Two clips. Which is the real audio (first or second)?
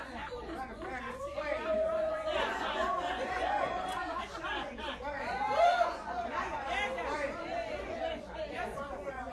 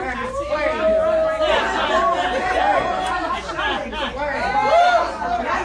second